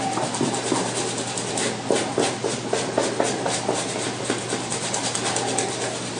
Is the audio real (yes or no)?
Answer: yes